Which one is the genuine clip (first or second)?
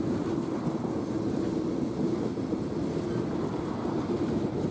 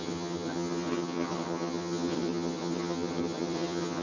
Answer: first